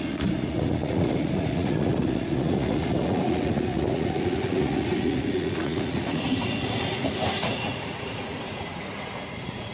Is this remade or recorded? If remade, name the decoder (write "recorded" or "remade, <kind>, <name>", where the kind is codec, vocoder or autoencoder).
remade, vocoder, Vocos